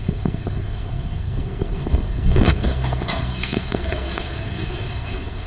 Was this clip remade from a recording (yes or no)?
yes